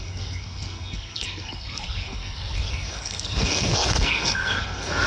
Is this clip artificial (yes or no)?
yes